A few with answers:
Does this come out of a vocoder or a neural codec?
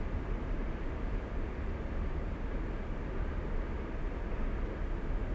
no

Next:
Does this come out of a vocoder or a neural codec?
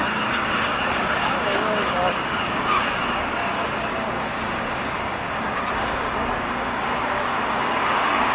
yes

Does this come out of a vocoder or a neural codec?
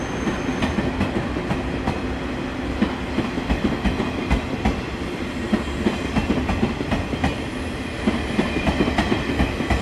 no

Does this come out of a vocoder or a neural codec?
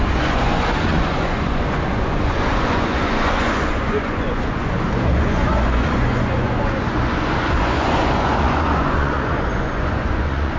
yes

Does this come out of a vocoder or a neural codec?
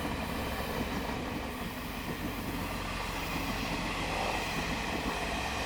no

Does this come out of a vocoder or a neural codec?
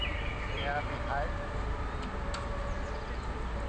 no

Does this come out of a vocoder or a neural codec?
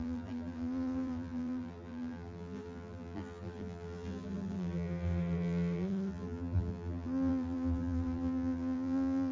yes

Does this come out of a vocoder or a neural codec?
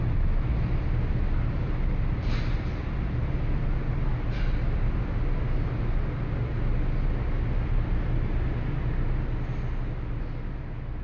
no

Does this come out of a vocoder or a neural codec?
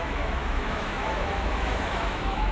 yes